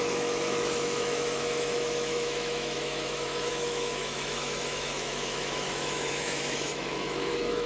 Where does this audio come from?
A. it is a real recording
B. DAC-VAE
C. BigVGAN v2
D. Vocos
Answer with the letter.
B